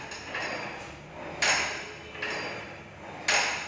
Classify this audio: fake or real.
real